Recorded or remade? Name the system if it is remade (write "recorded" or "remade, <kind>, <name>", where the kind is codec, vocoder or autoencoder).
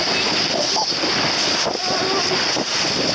recorded